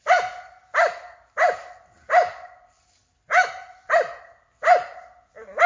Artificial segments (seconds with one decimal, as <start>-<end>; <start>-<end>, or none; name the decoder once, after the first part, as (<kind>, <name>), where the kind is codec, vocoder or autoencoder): 3.0-4.2 (vocoder, BigVGAN v2)